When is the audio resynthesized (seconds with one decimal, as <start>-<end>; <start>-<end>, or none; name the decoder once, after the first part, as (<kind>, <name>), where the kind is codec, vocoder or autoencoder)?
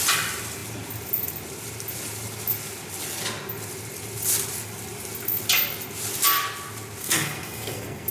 7.0-8.1 (codec, SNAC)